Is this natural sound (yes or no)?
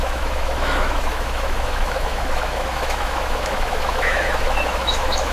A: no